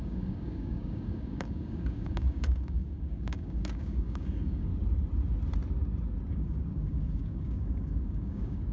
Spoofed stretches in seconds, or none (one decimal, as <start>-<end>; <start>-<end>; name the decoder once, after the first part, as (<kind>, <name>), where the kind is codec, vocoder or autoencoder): 0.0-4.7 (codec, DAC); 6.3-8.7